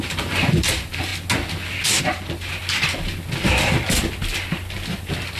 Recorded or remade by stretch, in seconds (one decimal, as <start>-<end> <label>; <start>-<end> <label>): 0.0-1.1 remade; 1.1-2.0 recorded; 2.0-2.6 remade; 2.6-5.4 recorded